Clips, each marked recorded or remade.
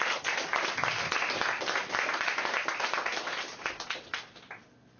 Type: recorded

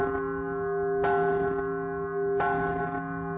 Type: recorded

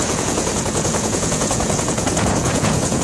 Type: remade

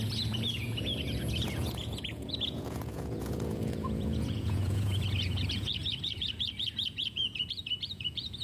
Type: remade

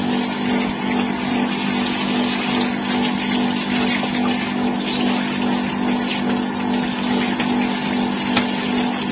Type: recorded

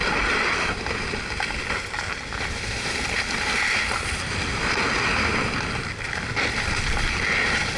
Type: recorded